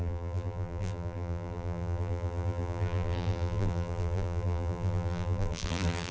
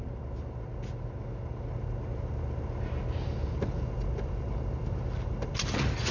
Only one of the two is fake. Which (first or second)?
first